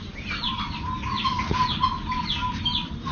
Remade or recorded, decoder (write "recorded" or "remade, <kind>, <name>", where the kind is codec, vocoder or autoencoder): recorded